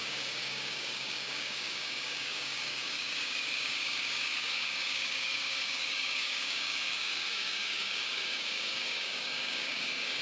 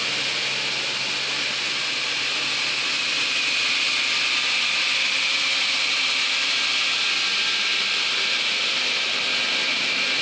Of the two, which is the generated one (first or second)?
first